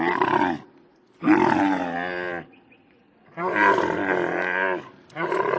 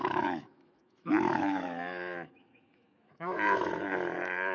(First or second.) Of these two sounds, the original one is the first